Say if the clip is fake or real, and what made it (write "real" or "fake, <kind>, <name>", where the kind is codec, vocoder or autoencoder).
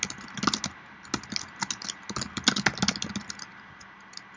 real